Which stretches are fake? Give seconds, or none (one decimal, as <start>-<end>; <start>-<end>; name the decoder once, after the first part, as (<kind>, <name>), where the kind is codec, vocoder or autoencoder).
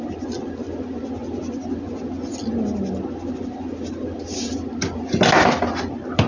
none